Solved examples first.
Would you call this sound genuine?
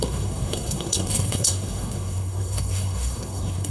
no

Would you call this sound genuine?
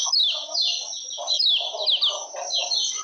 yes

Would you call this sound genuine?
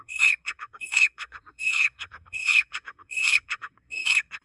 no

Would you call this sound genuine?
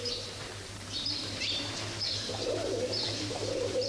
no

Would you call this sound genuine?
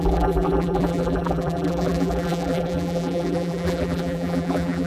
no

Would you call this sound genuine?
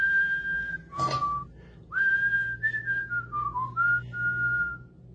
yes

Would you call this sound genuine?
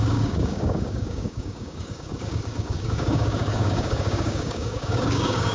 no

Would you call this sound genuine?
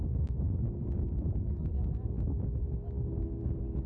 yes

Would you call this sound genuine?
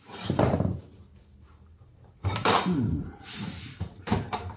no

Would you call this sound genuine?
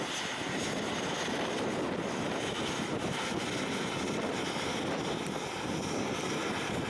no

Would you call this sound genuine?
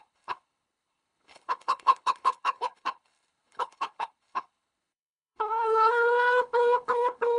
no